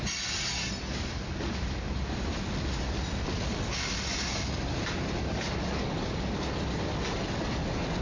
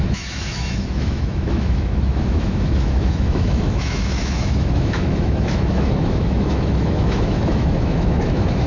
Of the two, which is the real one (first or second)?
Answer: first